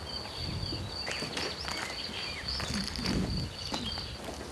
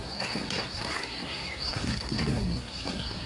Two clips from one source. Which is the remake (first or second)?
second